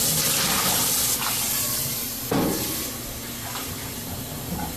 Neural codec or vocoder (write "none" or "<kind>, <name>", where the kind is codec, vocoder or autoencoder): none